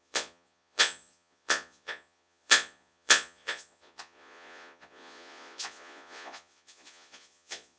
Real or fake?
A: fake